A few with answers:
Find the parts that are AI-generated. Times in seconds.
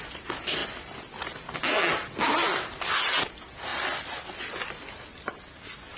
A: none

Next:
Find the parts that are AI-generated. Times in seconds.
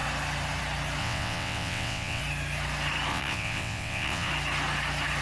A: 1.0-2.2 (vocoder, WaveNeXt); 3.1-4.3